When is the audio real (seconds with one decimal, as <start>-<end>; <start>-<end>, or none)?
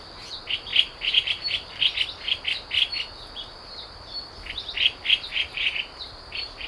0.0-0.7; 1.8-5.3